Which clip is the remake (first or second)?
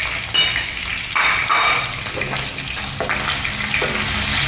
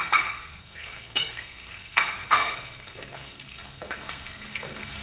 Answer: second